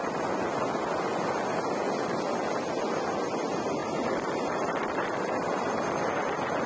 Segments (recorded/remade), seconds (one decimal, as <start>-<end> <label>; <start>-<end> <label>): 0.0-3.8 recorded; 3.8-5.3 remade; 5.3-6.7 recorded